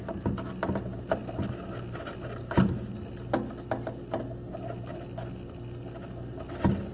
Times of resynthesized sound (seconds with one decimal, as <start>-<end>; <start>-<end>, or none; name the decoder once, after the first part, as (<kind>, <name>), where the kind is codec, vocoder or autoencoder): none